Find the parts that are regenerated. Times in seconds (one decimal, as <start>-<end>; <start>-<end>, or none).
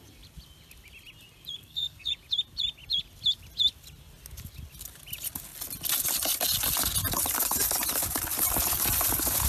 1.6-2.1